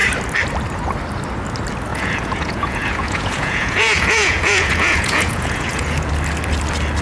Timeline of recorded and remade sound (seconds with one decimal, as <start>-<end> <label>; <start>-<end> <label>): 0.0-1.9 recorded; 1.9-6.1 remade; 6.1-7.0 recorded